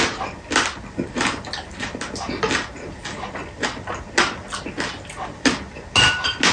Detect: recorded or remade recorded